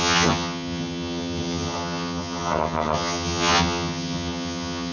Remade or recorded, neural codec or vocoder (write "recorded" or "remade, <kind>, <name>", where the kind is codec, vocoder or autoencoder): remade, vocoder, HiFi-GAN